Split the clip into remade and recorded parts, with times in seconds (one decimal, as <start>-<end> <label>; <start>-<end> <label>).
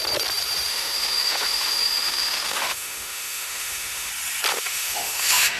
0.0-0.7 recorded; 0.7-4.1 remade; 4.1-4.5 recorded; 4.5-5.6 remade